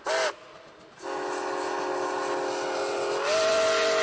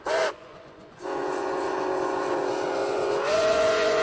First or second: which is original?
first